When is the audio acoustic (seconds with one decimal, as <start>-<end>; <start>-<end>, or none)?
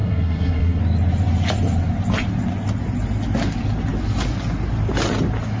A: 0.8-5.6